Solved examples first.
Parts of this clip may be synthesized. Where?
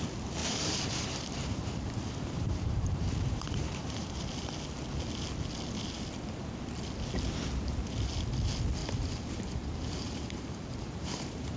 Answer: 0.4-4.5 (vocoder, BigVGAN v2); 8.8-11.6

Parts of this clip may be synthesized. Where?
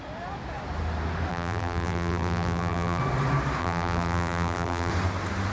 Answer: 1.3-3.0 (vocoder, BigVGAN v2); 3.6-4.9